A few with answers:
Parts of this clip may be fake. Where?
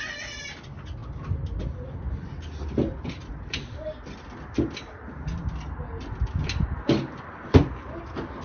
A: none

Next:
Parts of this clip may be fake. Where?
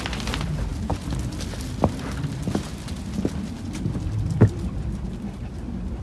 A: none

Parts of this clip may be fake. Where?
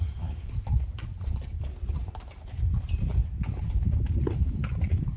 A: none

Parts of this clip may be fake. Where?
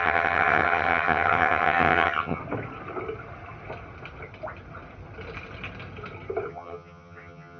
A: 0.0-2.4; 6.5-7.6